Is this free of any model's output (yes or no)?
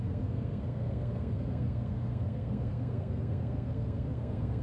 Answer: no